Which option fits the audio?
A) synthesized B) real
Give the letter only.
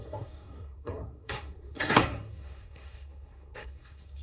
A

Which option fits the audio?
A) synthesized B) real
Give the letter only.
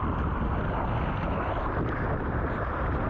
B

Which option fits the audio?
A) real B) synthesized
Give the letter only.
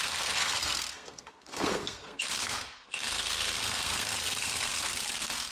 B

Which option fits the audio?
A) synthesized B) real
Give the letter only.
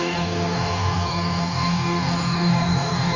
A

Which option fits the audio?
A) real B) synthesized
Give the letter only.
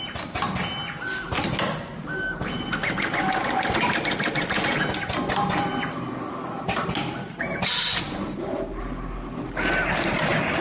A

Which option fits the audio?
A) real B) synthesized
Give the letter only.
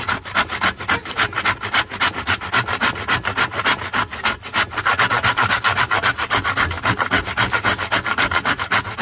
A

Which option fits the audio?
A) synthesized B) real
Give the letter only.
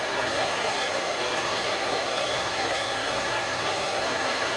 A